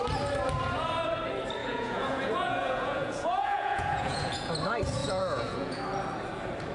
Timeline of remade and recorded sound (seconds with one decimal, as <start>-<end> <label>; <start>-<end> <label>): 0.0-1.6 recorded; 1.6-4.5 remade; 4.5-5.0 recorded; 5.0-5.8 remade; 5.8-6.7 recorded